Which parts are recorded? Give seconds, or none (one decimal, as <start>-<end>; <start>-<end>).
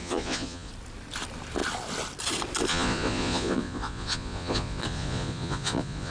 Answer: 0.7-2.7